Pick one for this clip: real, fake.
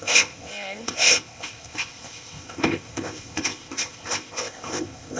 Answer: fake